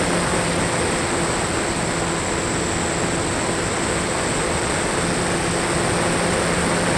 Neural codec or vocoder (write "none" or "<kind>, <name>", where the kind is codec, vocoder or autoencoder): none